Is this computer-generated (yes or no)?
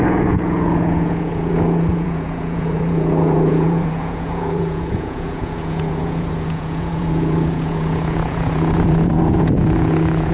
yes